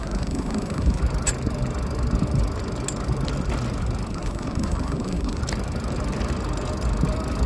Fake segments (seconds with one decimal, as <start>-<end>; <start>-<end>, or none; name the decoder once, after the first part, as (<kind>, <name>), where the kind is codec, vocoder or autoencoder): 0.0-1.0 (codec, SNAC); 4.1-5.4